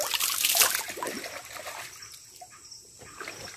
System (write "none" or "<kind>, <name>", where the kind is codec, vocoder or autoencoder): none